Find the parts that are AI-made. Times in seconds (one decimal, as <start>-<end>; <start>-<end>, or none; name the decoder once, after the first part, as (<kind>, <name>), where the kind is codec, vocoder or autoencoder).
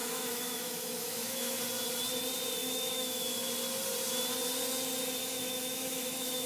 0.0-1.6 (autoencoder, DAC-VAE); 2.6-3.5; 5.2-6.5